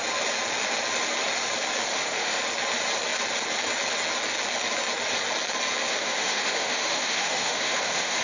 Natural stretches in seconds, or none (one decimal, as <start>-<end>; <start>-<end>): 0.0-1.9; 2.4-5.9